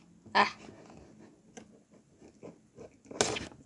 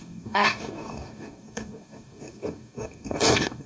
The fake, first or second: second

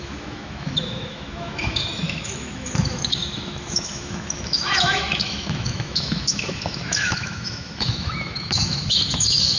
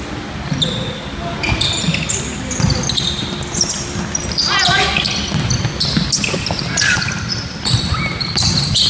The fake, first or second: first